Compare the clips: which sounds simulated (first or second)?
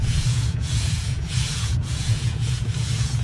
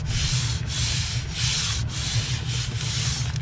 first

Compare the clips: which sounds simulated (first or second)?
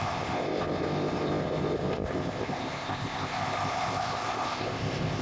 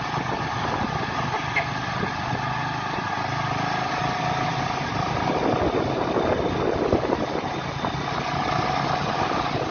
first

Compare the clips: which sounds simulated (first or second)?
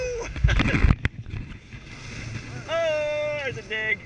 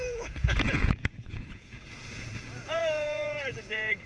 second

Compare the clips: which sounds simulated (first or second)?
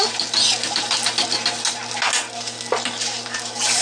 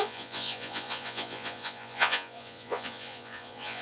second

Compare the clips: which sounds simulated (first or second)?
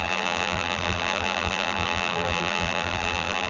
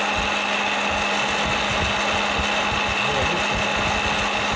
first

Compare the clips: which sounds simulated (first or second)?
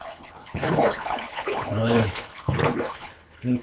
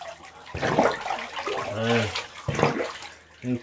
first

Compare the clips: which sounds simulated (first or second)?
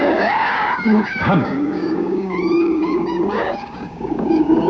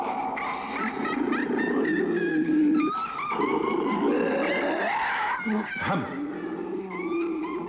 first